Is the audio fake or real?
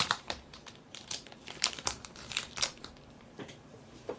fake